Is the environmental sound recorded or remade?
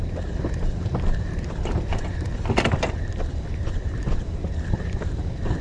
remade